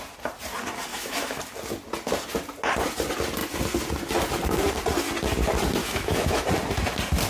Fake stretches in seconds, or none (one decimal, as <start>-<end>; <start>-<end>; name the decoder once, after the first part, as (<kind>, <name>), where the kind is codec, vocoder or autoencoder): 0.9-1.4 (autoencoder, DAC-VAE); 5.8-6.4